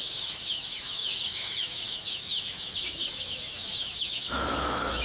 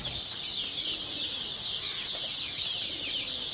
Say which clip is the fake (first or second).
first